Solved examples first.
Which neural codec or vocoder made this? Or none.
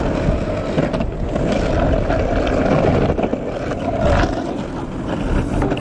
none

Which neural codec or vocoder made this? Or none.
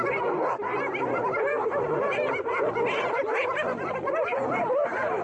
none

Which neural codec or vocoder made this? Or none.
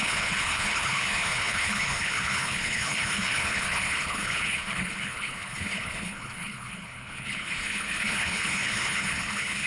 codec, HILCodec